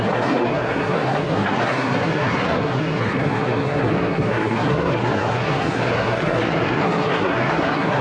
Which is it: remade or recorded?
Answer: remade